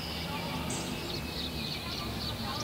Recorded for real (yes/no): yes